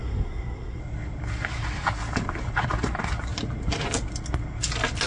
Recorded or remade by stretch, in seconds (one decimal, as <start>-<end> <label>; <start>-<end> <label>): 0.0-0.8 remade; 0.8-5.1 recorded